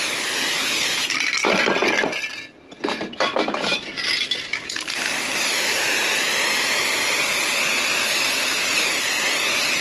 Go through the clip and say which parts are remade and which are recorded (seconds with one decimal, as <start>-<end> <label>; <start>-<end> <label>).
0.0-9.8 recorded